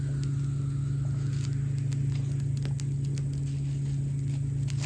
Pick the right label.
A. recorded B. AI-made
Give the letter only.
A